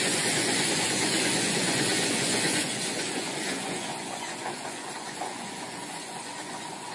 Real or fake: fake